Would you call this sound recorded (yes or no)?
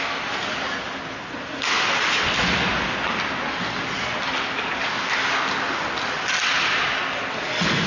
yes